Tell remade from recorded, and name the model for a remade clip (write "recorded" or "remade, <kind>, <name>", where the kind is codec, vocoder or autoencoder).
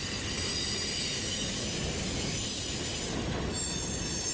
recorded